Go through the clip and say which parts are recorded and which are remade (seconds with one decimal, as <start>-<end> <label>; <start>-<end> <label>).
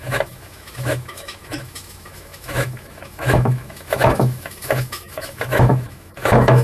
0.0-6.6 remade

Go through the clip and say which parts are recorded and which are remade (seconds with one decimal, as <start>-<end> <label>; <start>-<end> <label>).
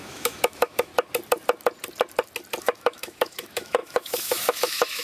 0.0-0.9 remade; 0.9-2.6 recorded; 2.6-5.0 remade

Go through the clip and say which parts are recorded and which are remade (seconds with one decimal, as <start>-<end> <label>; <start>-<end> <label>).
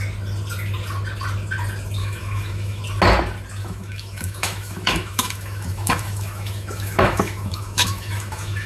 0.0-2.0 recorded; 2.0-2.8 remade; 2.8-3.6 recorded; 3.6-8.7 remade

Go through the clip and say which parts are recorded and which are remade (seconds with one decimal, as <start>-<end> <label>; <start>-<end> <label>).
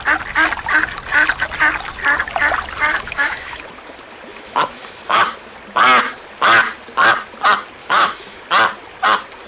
0.0-2.9 recorded; 2.9-3.6 remade; 3.6-4.3 recorded; 4.3-5.2 remade; 5.2-7.8 recorded; 7.8-8.4 remade; 8.4-9.5 recorded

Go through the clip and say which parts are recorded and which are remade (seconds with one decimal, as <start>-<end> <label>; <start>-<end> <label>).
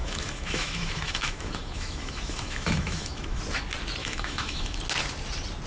0.0-3.4 remade; 3.4-4.0 recorded; 4.0-4.8 remade; 4.8-5.7 recorded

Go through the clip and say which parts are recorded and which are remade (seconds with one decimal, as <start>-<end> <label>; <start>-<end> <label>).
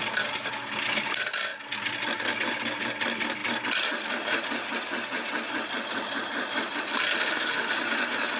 0.0-7.2 recorded; 7.2-7.7 remade; 7.7-8.4 recorded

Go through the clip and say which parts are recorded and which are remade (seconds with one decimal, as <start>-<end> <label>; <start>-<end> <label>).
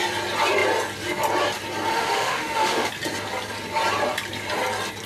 0.0-1.9 recorded; 1.9-2.9 remade; 2.9-5.1 recorded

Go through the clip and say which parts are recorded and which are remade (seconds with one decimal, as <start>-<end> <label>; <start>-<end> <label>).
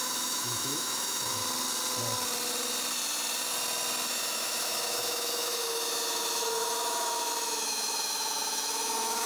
0.0-1.4 remade; 1.4-4.1 recorded; 4.1-9.3 remade